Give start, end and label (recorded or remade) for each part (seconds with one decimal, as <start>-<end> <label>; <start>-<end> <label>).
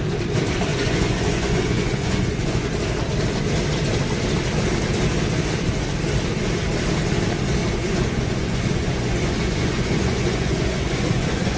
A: 0.0-0.7 recorded; 0.7-2.7 remade; 2.7-7.6 recorded; 7.6-11.6 remade